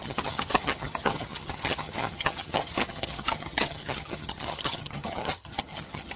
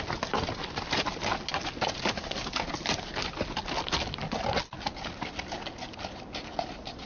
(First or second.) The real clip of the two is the second